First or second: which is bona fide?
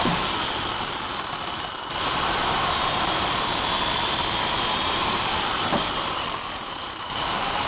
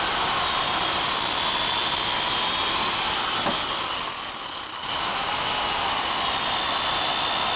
second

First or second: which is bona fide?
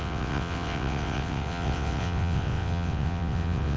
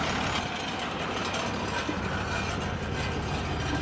second